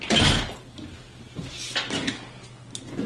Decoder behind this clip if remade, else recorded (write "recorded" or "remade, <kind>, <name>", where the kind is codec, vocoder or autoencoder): recorded